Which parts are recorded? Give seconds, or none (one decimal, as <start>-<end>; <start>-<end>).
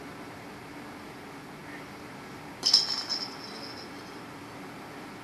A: 0.0-5.2